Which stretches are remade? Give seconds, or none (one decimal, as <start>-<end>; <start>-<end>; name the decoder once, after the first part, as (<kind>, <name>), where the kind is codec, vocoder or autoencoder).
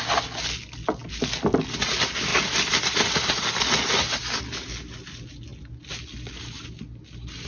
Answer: none